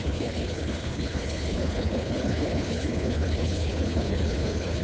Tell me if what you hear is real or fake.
fake